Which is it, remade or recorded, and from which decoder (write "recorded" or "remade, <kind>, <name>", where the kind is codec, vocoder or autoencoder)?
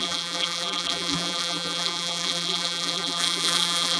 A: remade, vocoder, BigVGAN v2